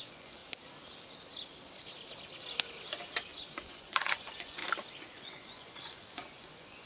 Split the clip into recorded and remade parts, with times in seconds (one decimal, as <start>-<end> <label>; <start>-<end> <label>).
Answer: 0.0-0.4 remade; 0.4-3.3 recorded; 3.3-4.6 remade; 4.6-5.2 recorded; 5.2-6.9 remade